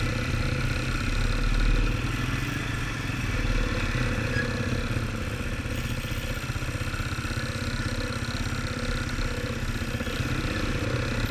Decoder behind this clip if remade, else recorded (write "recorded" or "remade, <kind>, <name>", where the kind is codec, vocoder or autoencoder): recorded